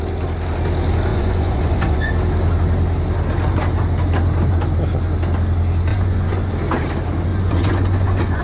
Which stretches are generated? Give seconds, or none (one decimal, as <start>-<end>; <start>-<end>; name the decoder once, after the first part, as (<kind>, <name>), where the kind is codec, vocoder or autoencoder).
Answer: 1.1-2.1 (vocoder, Vocos); 5.9-6.5; 7.3-8.4